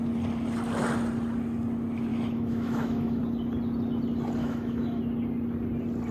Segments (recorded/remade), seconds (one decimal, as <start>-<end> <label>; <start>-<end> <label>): 0.0-2.1 recorded; 2.1-3.2 remade; 3.2-4.4 recorded; 4.4-5.0 remade; 5.0-6.1 recorded